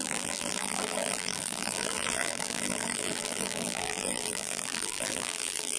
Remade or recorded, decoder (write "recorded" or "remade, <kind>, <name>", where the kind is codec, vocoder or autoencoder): remade, vocoder, BigVGAN v2